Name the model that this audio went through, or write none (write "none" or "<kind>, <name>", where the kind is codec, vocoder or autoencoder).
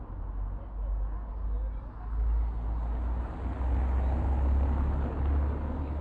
none